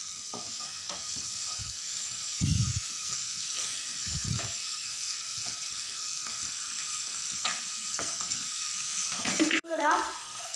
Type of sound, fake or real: fake